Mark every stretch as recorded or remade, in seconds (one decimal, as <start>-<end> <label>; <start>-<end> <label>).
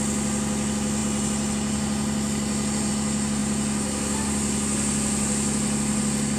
0.0-6.4 recorded